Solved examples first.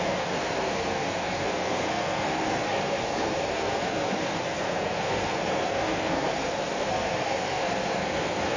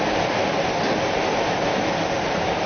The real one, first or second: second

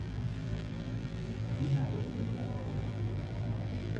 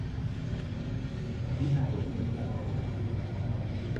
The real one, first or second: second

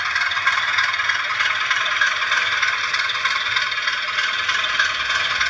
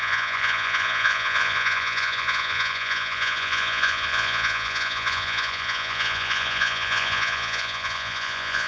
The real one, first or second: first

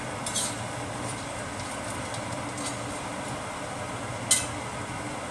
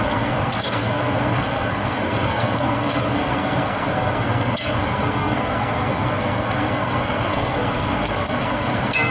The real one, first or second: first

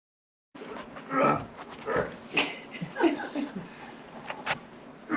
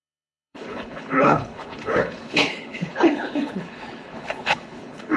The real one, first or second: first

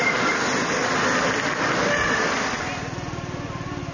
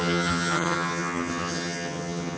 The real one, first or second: first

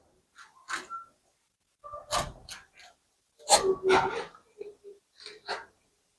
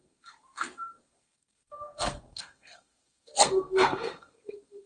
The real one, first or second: first